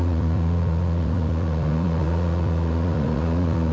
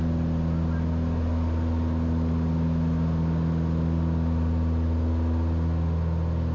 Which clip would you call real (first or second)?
second